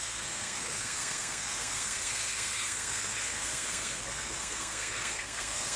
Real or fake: fake